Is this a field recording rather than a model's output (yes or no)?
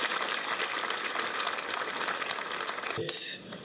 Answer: yes